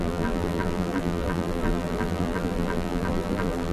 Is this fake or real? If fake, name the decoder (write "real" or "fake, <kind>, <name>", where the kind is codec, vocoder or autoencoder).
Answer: fake, vocoder, BigVGAN v2